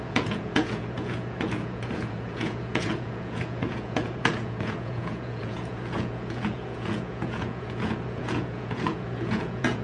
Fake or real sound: fake